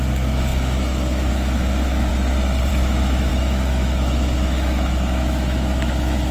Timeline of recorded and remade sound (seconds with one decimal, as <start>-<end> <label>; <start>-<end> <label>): 0.0-2.1 remade; 2.1-2.7 recorded; 2.7-6.3 remade